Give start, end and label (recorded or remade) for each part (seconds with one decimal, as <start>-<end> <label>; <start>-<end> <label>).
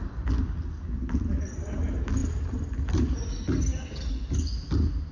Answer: 0.0-2.2 recorded; 2.2-3.0 remade; 3.0-5.1 recorded